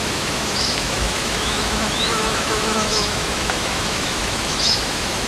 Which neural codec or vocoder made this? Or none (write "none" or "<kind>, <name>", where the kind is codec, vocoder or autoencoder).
autoencoder, DAC-VAE